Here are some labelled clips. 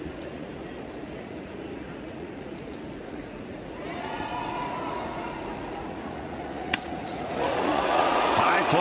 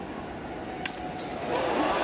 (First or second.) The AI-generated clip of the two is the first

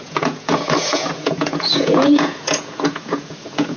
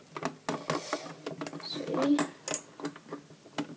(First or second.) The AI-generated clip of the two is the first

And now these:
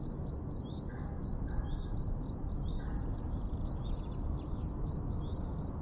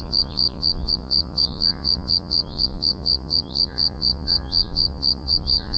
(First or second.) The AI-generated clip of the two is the second